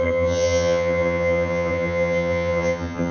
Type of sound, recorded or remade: remade